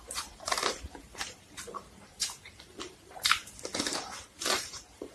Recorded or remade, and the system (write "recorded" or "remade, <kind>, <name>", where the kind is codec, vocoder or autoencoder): remade, vocoder, BigVGAN v2